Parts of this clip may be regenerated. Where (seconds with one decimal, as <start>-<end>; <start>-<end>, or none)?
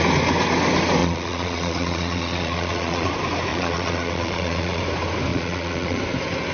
1.0-3.1; 3.5-4.8; 5.3-6.0